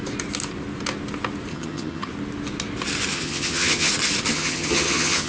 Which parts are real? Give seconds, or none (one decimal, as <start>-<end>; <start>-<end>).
0.0-1.5; 2.1-3.1; 3.9-4.3